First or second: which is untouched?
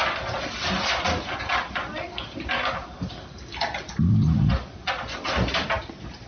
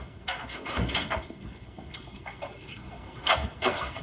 first